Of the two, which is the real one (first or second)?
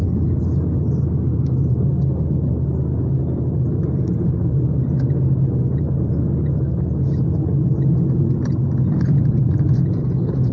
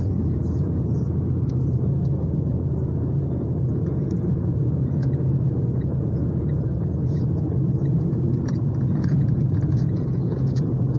first